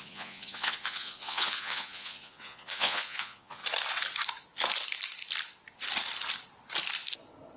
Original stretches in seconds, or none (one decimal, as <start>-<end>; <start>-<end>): 3.6-7.6